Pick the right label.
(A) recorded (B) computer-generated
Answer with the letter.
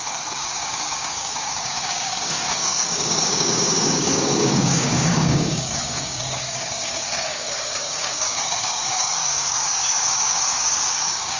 B